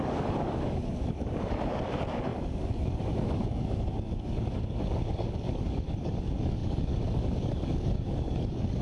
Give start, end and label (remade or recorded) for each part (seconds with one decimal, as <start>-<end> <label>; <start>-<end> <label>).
0.0-8.8 remade